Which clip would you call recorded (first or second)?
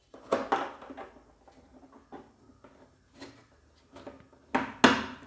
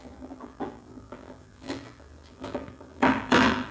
first